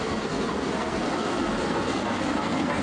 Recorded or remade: remade